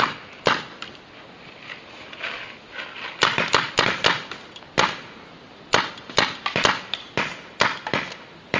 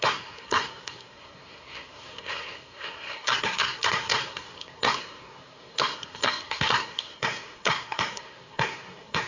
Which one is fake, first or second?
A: second